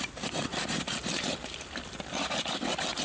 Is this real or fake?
real